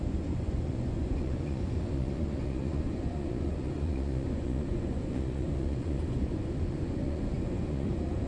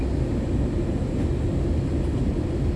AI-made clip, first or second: first